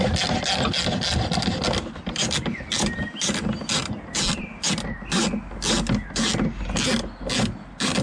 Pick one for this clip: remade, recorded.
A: recorded